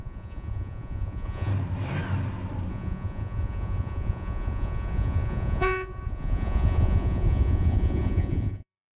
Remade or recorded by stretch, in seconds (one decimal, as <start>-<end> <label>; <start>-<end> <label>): 0.0-1.5 remade; 1.5-2.7 recorded; 2.7-9.0 remade